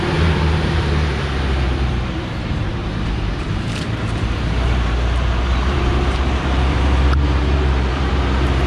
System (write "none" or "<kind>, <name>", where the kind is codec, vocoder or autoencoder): vocoder, BigVGAN v2